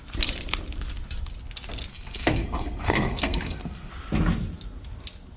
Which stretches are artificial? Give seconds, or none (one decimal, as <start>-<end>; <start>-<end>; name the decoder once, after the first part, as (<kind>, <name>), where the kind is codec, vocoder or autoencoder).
1.9-3.9 (codec, SNAC)